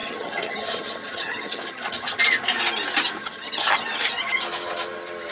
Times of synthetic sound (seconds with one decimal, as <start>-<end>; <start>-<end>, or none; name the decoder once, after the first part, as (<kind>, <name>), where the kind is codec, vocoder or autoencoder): 0.0-2.2 (vocoder, HiFi-GAN); 3.2-3.8